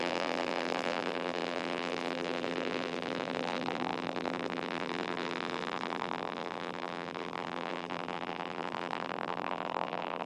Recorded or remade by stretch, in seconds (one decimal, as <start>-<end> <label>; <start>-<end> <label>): 0.0-10.3 remade